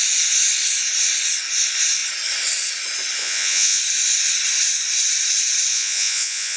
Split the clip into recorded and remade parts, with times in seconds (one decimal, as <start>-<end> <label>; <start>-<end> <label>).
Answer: 0.0-3.2 recorded; 3.2-3.8 remade; 3.8-5.7 recorded; 5.7-6.6 remade